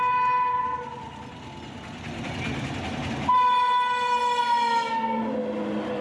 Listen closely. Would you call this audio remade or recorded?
recorded